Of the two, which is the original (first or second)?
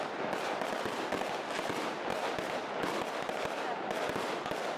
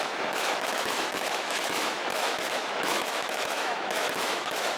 first